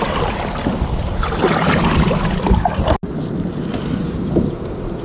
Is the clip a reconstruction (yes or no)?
no